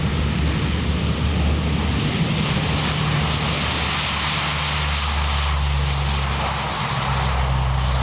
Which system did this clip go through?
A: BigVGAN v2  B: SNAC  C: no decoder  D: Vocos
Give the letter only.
C